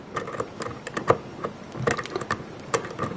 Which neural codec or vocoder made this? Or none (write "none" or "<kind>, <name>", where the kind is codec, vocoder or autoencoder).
none